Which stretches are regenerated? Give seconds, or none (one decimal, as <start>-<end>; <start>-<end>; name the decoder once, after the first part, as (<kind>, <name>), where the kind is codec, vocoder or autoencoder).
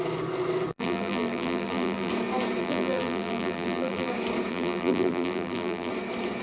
0.7-2.1 (vocoder, BigVGAN v2); 2.6-4.1; 4.5-5.9